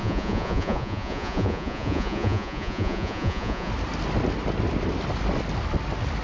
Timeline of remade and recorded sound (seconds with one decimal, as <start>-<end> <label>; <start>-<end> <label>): 0.0-3.7 remade; 3.7-6.2 recorded

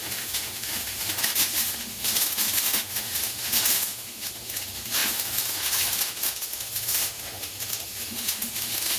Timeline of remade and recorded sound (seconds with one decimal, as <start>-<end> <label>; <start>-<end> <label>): 0.0-9.0 remade

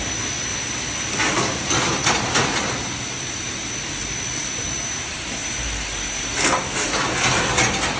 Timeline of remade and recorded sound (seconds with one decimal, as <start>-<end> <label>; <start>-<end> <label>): 0.0-8.0 recorded

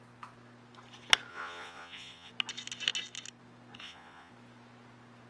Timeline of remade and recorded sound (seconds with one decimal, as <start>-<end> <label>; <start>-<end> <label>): 0.0-1.3 recorded; 1.3-2.3 remade; 2.3-3.8 recorded; 3.8-4.3 remade; 4.3-5.3 recorded

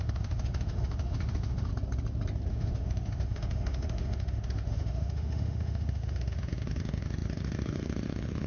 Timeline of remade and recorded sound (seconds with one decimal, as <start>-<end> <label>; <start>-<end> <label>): 0.0-1.7 remade; 1.7-2.5 recorded; 2.5-8.5 remade